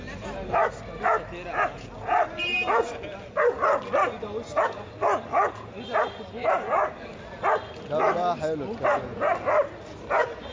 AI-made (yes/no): no